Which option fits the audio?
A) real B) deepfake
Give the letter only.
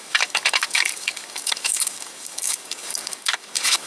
B